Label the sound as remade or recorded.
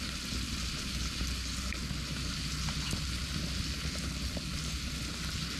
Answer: recorded